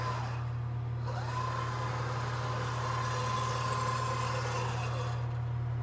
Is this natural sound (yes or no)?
yes